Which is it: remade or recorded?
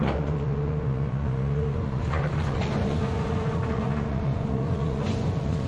remade